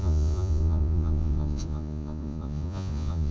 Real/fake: fake